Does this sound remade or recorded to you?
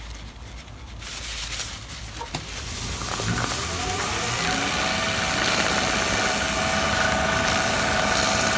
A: recorded